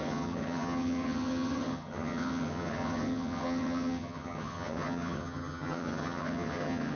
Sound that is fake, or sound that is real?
fake